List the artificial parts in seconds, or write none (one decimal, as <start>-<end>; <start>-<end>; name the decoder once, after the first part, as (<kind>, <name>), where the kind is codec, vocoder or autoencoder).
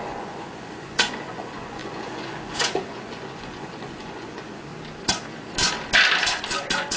0.0-4.7 (vocoder, Vocos); 6.2-7.0